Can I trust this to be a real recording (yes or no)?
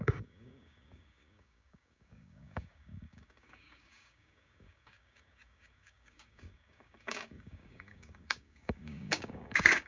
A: no